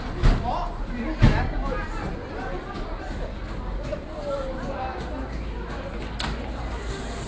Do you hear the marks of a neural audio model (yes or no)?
no